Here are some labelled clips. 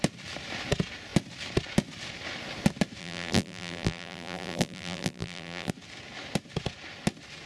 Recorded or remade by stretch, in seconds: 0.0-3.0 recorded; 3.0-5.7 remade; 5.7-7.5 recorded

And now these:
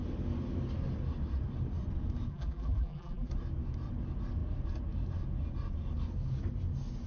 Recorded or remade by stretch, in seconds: 0.0-2.3 recorded; 2.3-3.3 remade; 3.3-7.1 recorded